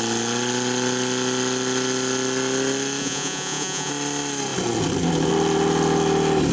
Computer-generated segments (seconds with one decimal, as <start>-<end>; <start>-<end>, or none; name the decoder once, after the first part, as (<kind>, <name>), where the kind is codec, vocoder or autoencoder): 3.0-3.9 (vocoder, Vocos)